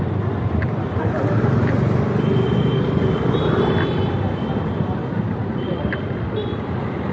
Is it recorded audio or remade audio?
recorded